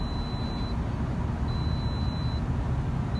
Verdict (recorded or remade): recorded